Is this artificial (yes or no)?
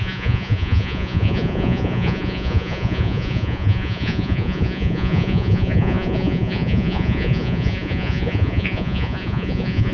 yes